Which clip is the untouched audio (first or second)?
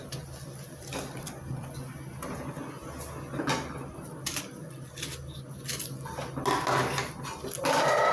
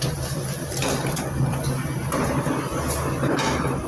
first